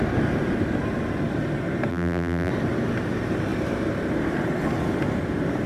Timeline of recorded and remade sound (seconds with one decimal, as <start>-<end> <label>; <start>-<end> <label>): 0.0-1.9 recorded; 1.9-2.5 remade; 2.5-5.7 recorded